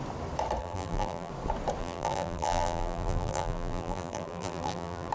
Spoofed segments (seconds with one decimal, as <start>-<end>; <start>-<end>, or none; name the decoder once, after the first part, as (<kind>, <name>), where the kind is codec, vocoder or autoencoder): 0.6-1.3 (vocoder, BigVGAN v2); 1.8-5.1